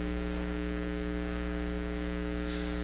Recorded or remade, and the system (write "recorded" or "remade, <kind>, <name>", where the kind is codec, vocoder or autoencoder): remade, codec, DAC